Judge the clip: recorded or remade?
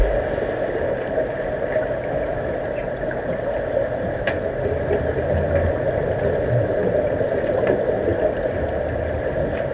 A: recorded